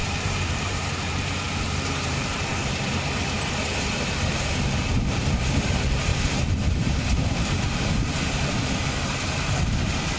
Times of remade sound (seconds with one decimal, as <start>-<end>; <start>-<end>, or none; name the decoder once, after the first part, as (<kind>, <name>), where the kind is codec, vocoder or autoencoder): 0.0-2.5 (vocoder, BigVGAN v2); 5.1-10.2